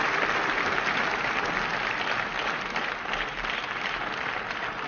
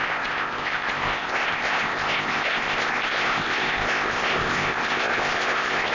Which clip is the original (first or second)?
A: first